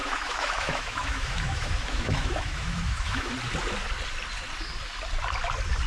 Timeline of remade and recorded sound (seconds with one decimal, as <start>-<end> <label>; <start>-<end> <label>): 0.0-3.3 remade; 3.3-5.9 recorded